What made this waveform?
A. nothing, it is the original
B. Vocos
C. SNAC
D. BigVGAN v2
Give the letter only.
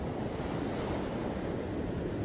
A